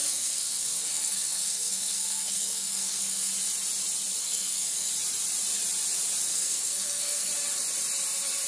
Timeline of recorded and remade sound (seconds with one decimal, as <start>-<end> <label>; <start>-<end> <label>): 0.0-3.3 remade; 3.3-4.2 recorded; 4.2-4.9 remade; 4.9-6.3 recorded; 6.3-7.3 remade; 7.3-8.5 recorded